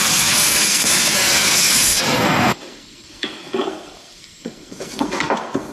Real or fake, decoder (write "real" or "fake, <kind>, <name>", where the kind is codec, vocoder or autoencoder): fake, codec, SNAC